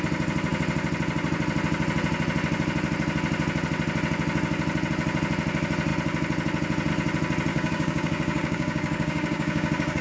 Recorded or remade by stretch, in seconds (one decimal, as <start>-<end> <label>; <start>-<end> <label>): 0.0-7.5 recorded; 7.5-10.0 remade